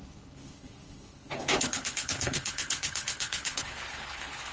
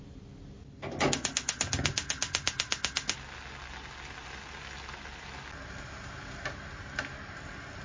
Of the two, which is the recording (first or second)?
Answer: second